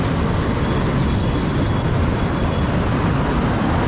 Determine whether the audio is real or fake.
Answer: real